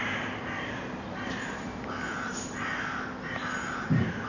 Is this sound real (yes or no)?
yes